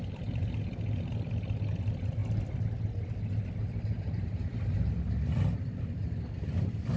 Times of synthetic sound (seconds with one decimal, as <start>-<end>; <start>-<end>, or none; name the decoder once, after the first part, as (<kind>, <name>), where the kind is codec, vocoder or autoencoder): none